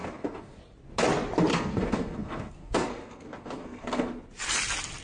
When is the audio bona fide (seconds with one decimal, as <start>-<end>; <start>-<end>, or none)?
0.6-1.5; 4.2-5.0